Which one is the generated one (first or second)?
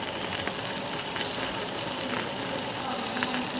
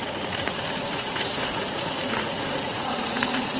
second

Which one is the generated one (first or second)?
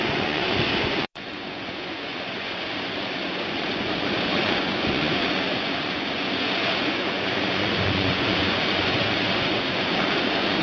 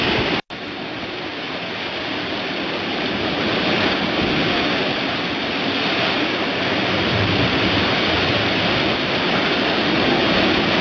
first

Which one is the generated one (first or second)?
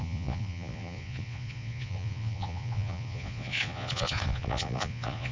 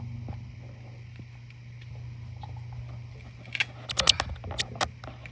first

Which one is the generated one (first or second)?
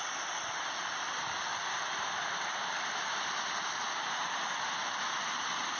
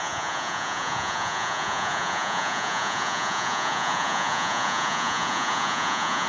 second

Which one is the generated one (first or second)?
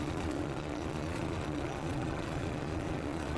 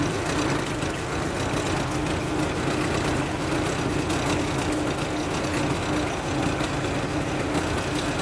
first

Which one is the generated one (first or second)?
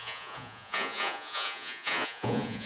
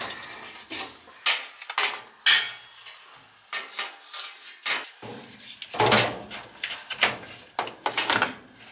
first